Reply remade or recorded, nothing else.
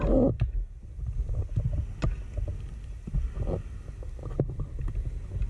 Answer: recorded